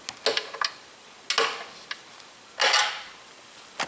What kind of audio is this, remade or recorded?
recorded